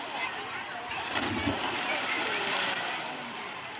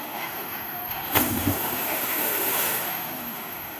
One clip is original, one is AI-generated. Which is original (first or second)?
first